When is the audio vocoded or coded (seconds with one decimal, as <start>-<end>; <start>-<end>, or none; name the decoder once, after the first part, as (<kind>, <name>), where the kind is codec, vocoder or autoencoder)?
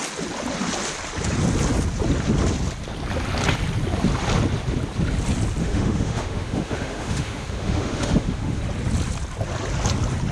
5.6-8.6 (autoencoder, DAC-VAE)